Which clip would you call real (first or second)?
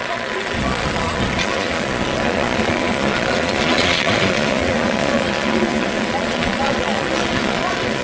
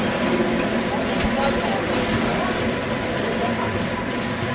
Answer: second